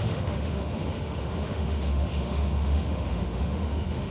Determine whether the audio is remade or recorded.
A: remade